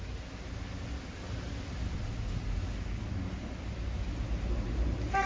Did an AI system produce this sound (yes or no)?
no